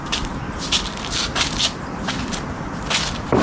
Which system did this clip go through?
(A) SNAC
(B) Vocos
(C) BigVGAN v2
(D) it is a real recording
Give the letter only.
C